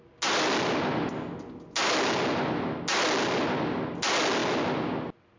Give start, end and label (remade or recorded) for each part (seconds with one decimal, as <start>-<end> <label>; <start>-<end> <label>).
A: 0.0-5.4 recorded